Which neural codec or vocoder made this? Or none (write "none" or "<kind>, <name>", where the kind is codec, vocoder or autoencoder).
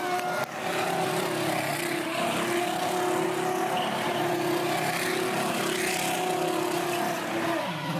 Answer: none